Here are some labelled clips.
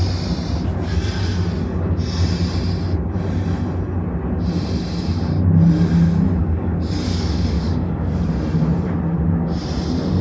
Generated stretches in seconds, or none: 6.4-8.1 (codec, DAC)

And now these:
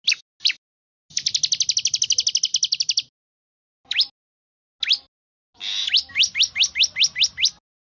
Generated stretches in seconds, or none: none

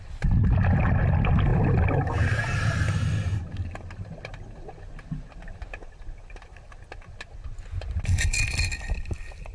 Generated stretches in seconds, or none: none

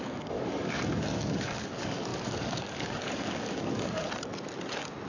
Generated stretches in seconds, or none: 0.0-4.0 (codec, DAC)

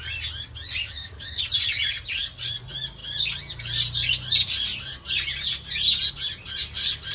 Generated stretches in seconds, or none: 0.8-1.4 (codec, DAC)

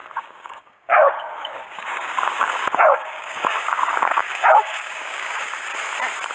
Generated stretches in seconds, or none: 0.0-5.7 (codec, DAC)